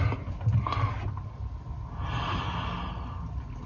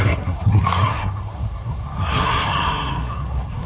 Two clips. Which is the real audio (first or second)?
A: first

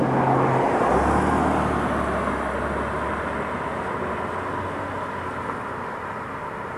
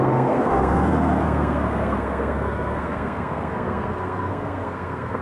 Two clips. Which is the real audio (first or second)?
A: first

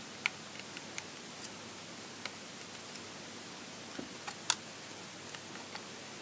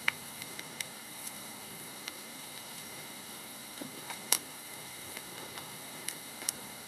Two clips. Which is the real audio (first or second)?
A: first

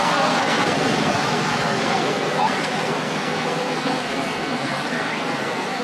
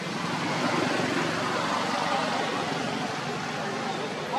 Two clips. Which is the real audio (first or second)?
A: second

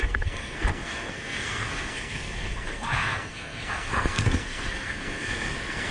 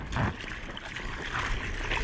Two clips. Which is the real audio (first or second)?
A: second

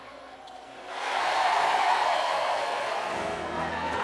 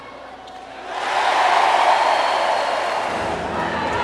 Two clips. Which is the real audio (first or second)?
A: second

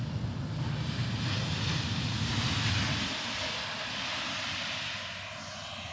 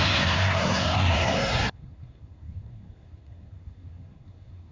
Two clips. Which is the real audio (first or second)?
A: first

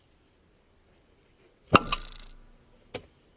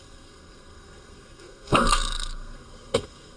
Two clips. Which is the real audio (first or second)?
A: first